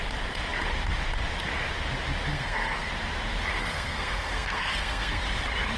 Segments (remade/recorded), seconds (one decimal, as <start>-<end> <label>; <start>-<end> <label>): 0.0-2.3 recorded; 2.3-2.9 remade; 2.9-3.6 recorded; 3.6-5.2 remade; 5.2-5.8 recorded